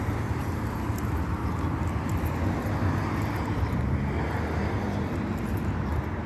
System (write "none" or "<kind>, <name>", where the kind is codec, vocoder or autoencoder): none